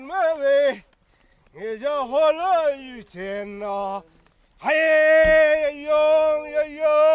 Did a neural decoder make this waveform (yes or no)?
no